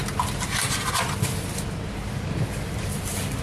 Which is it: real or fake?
fake